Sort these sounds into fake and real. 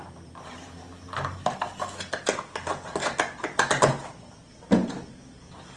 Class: real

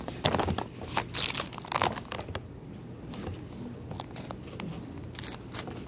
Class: real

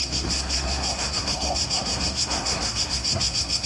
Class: fake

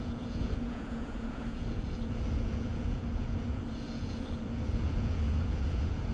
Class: fake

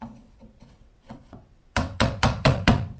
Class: fake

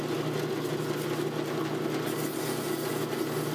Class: real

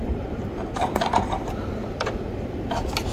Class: fake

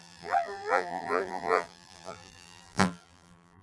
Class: fake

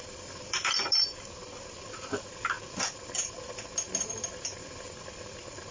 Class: real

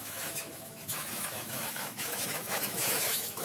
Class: fake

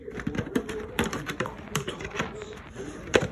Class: fake